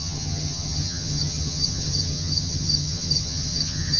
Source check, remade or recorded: remade